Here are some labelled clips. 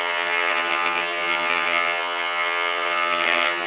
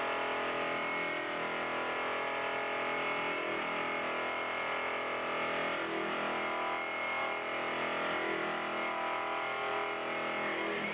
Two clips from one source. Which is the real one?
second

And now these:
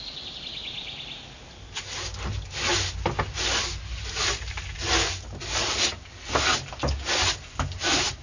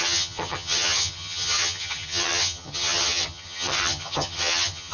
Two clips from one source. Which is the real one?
first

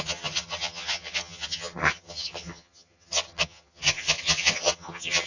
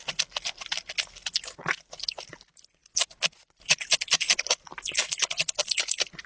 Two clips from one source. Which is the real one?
second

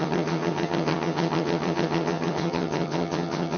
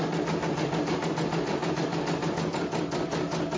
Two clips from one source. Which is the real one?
second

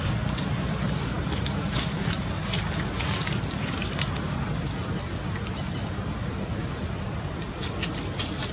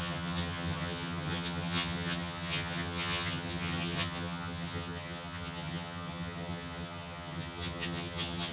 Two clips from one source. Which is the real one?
first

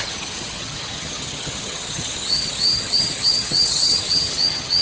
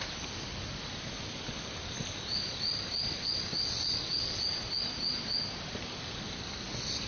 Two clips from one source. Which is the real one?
second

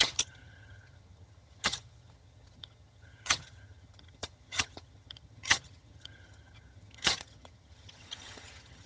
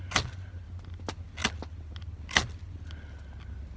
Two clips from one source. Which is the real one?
second